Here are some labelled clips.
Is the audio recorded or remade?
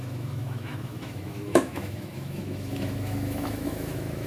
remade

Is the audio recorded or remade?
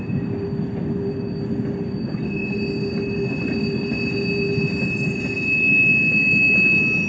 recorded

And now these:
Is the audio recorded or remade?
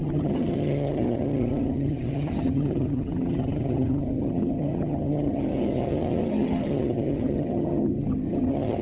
remade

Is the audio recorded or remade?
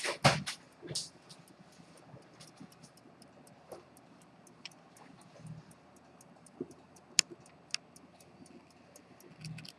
recorded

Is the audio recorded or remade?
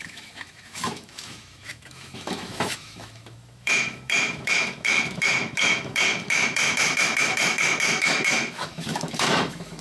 remade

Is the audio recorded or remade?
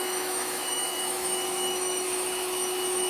remade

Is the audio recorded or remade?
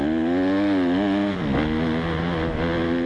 recorded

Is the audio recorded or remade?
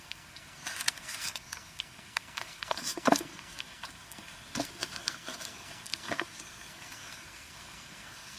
remade